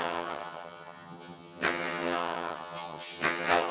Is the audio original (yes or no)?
no